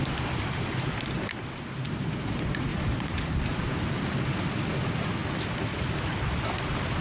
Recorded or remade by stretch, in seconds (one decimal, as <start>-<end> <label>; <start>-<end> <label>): 0.0-2.7 recorded; 2.7-4.4 remade; 4.4-7.0 recorded